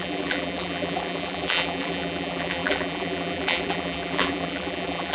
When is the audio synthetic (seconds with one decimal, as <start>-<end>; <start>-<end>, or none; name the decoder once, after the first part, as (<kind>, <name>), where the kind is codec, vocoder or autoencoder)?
0.0-5.1 (vocoder, BigVGAN v2)